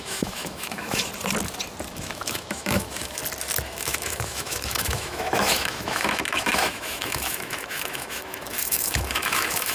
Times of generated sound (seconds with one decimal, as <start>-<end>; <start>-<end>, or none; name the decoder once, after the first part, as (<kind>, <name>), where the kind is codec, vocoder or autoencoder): 0.0-1.1 (autoencoder, DAC-VAE); 1.9-3.2; 3.7-9.7